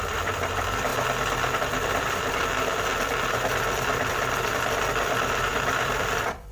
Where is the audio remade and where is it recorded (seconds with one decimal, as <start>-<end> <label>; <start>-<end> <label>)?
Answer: 0.0-0.9 remade; 0.9-1.6 recorded; 1.6-6.5 remade